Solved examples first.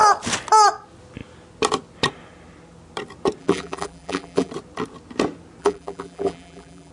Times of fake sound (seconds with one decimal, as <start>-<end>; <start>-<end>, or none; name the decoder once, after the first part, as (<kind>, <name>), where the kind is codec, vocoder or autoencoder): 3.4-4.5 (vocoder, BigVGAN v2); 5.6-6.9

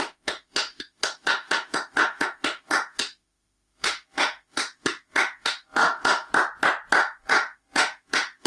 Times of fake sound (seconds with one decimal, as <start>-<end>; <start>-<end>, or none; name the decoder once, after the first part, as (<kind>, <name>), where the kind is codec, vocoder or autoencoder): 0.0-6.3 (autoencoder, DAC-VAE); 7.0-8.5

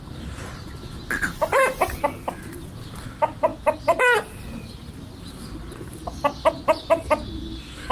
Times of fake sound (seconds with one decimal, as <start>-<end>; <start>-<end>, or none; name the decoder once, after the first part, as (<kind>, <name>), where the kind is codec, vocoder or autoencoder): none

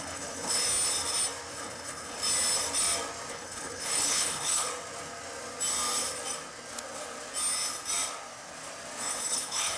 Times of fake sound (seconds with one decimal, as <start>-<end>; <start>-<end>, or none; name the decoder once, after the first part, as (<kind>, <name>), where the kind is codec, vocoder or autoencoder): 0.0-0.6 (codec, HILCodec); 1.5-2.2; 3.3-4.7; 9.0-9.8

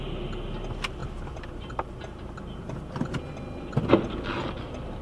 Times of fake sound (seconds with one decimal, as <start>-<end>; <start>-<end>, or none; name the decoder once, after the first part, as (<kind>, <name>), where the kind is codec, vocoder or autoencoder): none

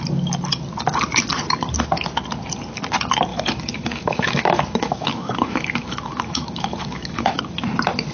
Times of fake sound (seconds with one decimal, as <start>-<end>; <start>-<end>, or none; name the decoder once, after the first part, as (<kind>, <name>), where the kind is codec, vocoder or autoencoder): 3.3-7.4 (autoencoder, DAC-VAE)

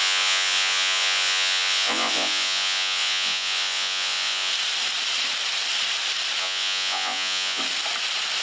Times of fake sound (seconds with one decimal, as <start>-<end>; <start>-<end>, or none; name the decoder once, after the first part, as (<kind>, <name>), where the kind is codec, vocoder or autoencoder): 0.0-4.5 (vocoder, Vocos); 6.4-7.6

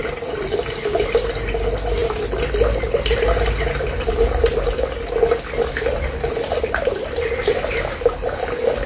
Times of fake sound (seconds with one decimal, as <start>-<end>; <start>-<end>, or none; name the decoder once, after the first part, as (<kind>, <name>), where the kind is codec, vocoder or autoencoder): none